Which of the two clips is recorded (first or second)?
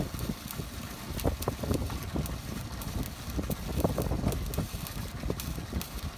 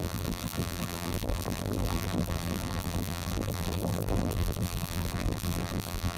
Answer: first